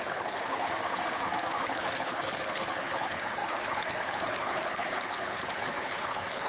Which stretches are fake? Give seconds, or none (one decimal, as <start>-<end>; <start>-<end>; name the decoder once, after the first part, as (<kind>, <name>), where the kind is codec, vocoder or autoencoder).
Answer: 0.0-0.7 (codec, HILCodec); 1.5-6.5